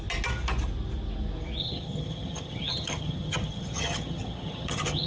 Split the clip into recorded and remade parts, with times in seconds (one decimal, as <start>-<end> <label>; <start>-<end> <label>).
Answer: 0.0-1.6 recorded; 1.6-5.1 remade